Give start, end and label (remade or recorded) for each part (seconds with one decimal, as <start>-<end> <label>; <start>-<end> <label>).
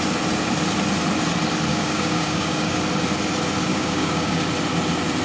0.0-1.7 recorded; 1.7-2.8 remade; 2.8-3.7 recorded; 3.7-4.4 remade; 4.4-5.2 recorded